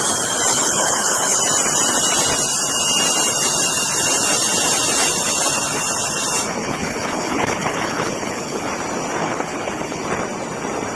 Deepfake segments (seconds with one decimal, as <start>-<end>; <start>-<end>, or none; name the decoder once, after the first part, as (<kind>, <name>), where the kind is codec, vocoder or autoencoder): 0.5-1.4 (codec, HILCodec); 6.6-8.7; 9.2-10.0